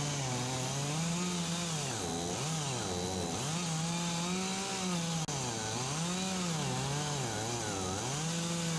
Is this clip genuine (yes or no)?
yes